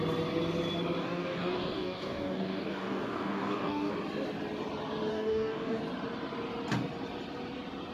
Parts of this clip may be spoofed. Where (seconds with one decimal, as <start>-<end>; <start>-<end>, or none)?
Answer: 1.0-3.9; 5.1-5.8